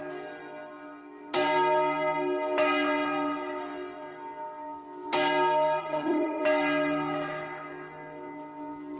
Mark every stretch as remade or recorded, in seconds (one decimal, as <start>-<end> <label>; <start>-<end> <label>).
0.0-5.8 recorded; 5.8-6.4 remade; 6.4-9.0 recorded